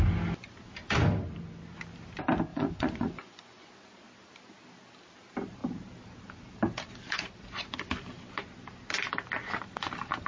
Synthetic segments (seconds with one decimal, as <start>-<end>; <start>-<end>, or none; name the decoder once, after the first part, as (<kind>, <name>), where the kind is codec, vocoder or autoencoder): 2.5-3.7 (vocoder, Vocos)